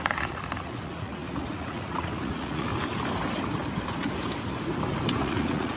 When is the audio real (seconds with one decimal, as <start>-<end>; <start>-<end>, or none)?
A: 2.7-5.2